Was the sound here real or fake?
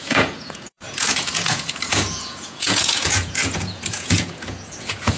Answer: fake